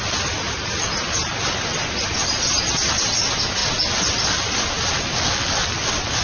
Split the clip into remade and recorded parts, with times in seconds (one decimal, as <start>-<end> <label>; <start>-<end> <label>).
0.0-6.2 recorded